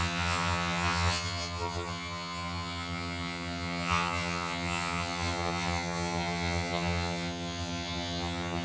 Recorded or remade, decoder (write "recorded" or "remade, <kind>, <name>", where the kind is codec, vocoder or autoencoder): remade, vocoder, HiFi-GAN